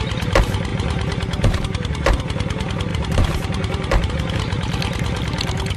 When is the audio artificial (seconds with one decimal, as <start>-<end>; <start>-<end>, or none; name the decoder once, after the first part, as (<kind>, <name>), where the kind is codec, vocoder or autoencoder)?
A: 0.7-2.2 (vocoder, BigVGAN v2); 2.9-4.1